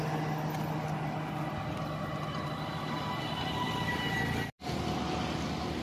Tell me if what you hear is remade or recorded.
recorded